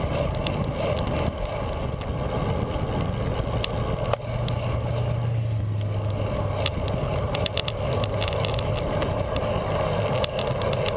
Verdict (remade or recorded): recorded